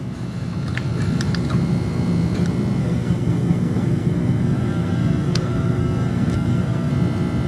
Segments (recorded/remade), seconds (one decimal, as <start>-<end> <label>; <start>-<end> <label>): 0.0-2.8 recorded; 2.8-6.9 remade; 6.9-7.5 recorded